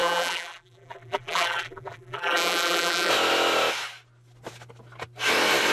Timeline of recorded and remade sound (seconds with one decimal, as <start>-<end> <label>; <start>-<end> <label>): 0.0-3.1 remade; 3.1-5.7 recorded